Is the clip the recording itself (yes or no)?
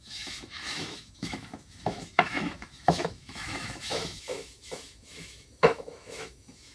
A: no